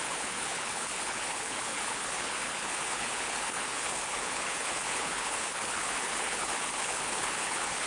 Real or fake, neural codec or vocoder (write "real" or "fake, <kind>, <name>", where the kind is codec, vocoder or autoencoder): fake, codec, HILCodec